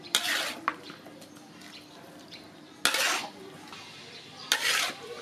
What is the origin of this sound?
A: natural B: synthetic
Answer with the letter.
A